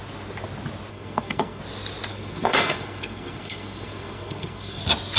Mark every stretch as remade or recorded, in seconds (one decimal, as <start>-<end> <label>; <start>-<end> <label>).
0.0-0.9 recorded; 0.9-1.6 remade; 1.6-2.1 recorded; 2.1-4.8 remade; 4.8-5.2 recorded